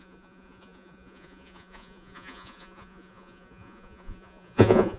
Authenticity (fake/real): fake